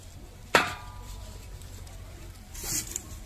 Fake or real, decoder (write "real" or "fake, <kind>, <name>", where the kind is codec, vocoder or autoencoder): fake, vocoder, BigVGAN v2